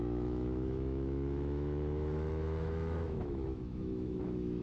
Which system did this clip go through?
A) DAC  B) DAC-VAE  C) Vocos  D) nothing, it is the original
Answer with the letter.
B